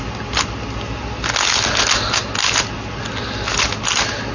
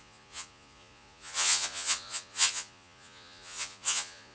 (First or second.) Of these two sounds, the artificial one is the second